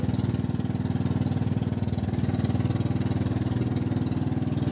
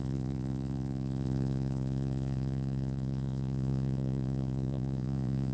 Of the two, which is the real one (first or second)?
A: first